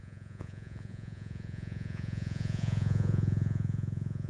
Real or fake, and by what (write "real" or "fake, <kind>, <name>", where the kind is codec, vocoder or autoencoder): fake, vocoder, Vocos